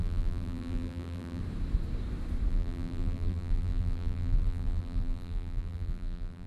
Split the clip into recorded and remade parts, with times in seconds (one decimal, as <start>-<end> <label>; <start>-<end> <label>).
0.0-1.4 remade; 1.4-2.5 recorded; 2.5-6.5 remade